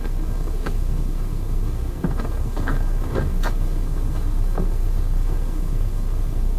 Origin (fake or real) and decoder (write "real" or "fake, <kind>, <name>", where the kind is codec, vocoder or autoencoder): fake, codec, SNAC